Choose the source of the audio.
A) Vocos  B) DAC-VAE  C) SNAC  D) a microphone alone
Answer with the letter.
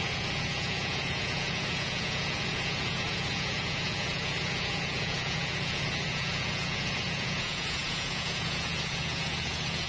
A